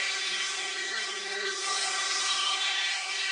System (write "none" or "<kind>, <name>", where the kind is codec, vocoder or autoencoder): codec, SNAC